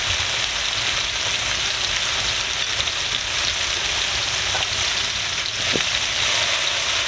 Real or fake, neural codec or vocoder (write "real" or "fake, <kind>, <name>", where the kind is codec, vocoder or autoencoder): real